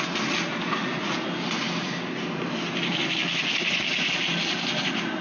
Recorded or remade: recorded